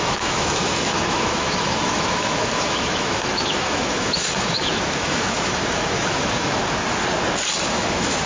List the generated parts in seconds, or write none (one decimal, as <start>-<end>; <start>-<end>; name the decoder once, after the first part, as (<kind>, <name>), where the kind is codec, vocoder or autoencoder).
0.0-6.6 (autoencoder, DAC-VAE); 7.7-8.3